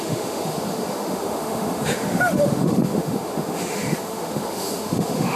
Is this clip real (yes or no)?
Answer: no